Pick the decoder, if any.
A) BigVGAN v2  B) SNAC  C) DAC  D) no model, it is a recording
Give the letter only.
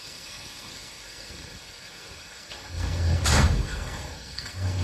B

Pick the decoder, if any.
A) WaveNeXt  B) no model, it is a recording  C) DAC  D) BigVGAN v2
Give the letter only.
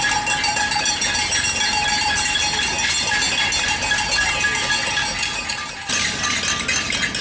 B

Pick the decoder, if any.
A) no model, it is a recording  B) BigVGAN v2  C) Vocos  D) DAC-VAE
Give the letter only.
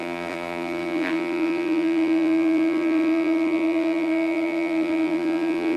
B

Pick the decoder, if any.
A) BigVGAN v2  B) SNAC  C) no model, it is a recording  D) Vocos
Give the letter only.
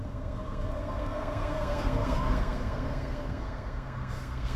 B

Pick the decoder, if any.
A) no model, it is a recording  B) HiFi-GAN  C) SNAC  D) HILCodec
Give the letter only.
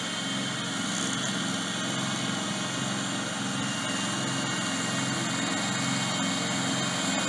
A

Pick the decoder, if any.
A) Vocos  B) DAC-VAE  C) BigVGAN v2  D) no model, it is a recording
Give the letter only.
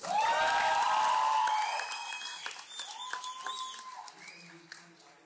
D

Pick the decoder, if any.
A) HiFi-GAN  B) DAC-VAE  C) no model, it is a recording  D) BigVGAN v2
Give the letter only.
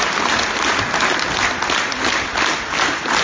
C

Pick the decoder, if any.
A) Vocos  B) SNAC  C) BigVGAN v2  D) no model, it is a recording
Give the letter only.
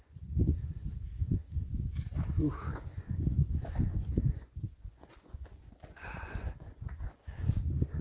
A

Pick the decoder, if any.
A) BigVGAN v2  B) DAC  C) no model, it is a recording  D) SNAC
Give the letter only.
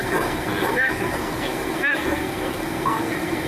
D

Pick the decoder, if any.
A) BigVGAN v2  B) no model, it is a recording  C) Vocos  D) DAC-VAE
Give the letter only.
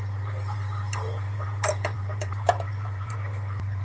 A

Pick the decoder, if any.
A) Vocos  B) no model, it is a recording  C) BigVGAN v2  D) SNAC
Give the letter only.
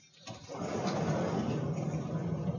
B